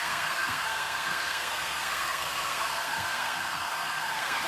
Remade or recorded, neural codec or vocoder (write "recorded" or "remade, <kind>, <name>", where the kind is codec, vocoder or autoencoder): remade, codec, SNAC